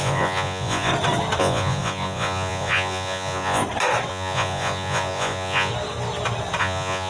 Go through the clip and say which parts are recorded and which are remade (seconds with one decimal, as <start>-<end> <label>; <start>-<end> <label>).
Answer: 0.0-0.9 remade; 0.9-1.4 recorded; 1.4-3.6 remade; 3.6-4.1 recorded; 4.1-5.7 remade; 5.7-6.6 recorded; 6.6-7.1 remade